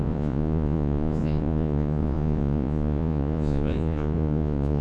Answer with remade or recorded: remade